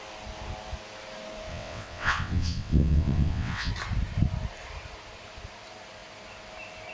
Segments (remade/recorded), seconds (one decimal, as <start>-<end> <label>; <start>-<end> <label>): 0.0-1.5 recorded; 1.5-3.7 remade; 3.7-6.9 recorded